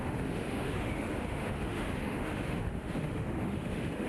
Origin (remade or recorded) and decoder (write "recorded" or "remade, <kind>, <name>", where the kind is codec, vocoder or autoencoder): remade, autoencoder, DAC-VAE